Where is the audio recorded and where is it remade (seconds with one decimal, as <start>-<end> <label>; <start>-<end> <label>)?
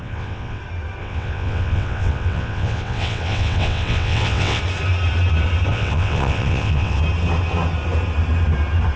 0.0-0.6 remade; 0.6-1.0 recorded; 1.0-4.6 remade; 4.6-5.7 recorded; 5.7-7.0 remade; 7.0-9.0 recorded